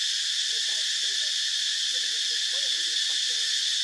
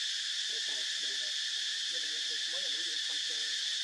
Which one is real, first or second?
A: first